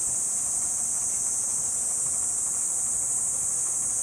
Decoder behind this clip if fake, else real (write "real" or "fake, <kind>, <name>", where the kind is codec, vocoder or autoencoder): real